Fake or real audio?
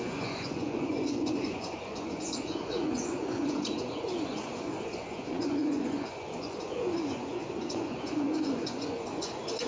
fake